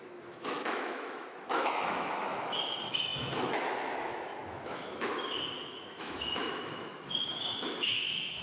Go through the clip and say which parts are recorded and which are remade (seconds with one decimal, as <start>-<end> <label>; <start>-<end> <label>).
0.0-8.4 remade